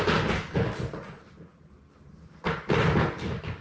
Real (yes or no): yes